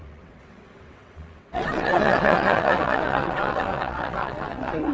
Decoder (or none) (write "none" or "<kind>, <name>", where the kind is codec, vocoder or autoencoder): vocoder, WaveNeXt